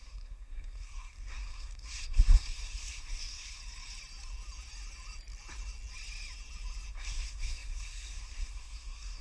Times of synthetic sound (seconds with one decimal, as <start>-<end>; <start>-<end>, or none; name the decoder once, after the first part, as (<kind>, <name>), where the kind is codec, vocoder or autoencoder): 0.0-3.6 (codec, SNAC); 6.9-9.2

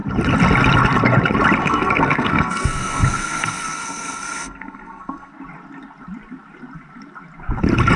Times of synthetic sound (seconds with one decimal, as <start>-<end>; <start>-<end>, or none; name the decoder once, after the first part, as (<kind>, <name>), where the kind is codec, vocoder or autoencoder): 1.6-5.3 (codec, SNAC)

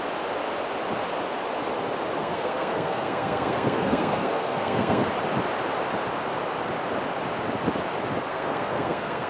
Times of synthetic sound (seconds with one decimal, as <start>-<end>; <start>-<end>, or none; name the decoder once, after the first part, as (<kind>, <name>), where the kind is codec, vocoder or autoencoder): 2.2-5.1 (codec, SNAC); 8.3-9.3

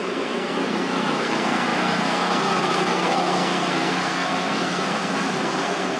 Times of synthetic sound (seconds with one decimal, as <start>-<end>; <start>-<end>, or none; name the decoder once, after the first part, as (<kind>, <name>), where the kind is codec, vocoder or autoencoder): 0.0-6.0 (codec, SNAC)

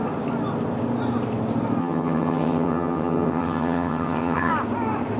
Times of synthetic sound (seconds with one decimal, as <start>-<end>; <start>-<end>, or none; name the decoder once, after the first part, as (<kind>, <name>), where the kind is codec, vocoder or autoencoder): 1.8-4.5 (vocoder, HiFi-GAN)

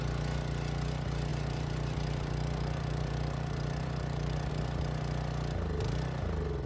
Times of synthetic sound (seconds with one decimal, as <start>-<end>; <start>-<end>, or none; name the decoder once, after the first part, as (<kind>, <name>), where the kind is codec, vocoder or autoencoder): 1.3-4.5 (vocoder, BigVGAN v2)

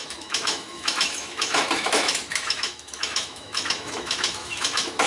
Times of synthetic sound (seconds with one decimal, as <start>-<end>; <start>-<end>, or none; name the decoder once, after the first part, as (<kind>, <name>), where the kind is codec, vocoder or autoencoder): 0.0-5.1 (autoencoder, DAC-VAE)